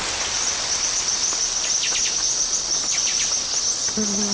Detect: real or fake real